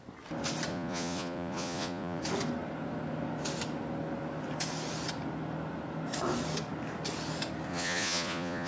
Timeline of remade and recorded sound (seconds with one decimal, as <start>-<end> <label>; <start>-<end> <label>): 0.0-0.7 recorded; 0.7-2.2 remade; 2.2-7.7 recorded; 7.7-8.7 remade